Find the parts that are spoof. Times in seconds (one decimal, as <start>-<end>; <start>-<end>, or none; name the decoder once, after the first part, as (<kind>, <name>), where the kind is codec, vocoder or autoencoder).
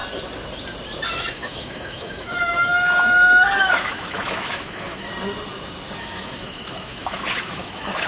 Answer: 1.1-5.1 (autoencoder, DAC-VAE); 6.0-8.1